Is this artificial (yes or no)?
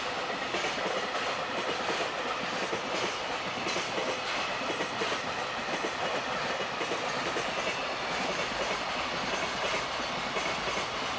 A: no